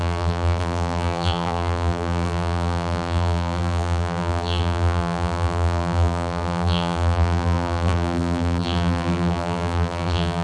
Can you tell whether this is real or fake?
fake